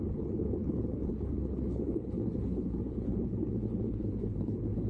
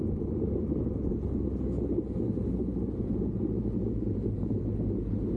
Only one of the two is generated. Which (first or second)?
first